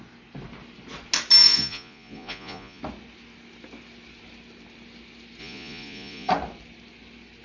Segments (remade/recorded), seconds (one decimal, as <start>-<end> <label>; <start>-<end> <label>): 0.0-1.4 recorded; 1.4-2.8 remade; 2.8-5.4 recorded; 5.4-6.3 remade; 6.3-7.4 recorded